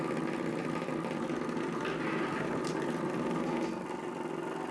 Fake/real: real